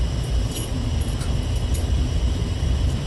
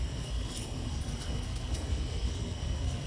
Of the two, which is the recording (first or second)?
first